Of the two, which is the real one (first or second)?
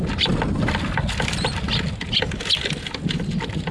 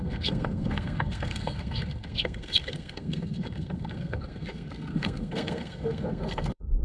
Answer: first